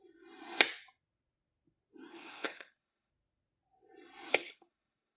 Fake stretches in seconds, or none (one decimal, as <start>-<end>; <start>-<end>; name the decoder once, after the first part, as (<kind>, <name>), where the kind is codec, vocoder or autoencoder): 2.1-3.1 (codec, HILCodec); 4.3-5.2